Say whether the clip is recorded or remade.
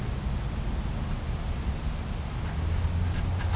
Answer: recorded